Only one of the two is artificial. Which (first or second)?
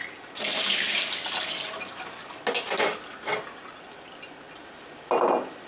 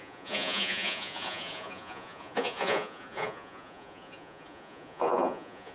second